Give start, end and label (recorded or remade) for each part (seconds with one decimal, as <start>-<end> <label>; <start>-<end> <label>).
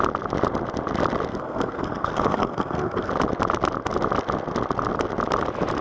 0.0-1.3 recorded; 1.3-3.1 remade; 3.1-5.8 recorded